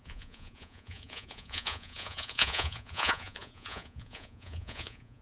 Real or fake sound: fake